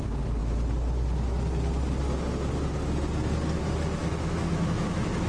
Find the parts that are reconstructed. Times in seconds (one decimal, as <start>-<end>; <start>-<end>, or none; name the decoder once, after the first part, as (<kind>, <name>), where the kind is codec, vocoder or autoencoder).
4.0-5.3 (autoencoder, DAC-VAE)